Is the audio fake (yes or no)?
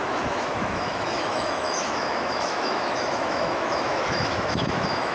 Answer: yes